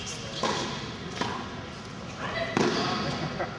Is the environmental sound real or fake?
real